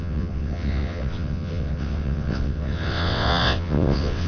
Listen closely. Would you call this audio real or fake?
fake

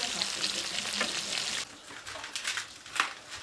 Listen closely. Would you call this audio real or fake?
real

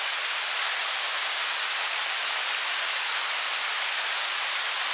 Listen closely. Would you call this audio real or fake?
real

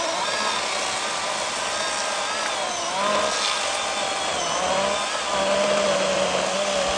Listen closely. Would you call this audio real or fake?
real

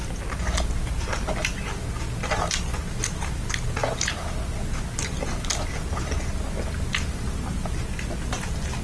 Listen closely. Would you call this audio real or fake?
real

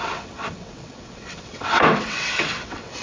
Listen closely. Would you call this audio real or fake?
fake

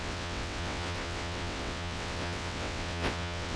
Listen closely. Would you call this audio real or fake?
fake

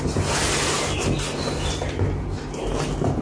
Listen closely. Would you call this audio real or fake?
real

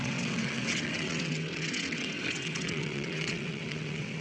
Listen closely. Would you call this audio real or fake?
fake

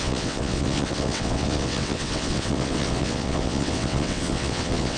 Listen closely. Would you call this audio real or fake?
fake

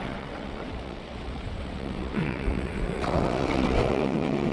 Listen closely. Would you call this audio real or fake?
fake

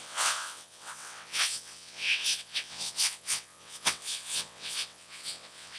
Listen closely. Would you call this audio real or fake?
fake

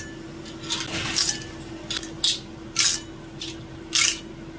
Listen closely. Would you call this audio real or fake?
real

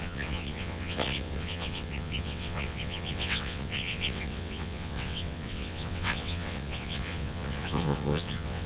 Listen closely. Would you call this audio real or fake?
fake